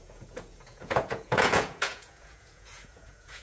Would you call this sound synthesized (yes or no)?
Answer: yes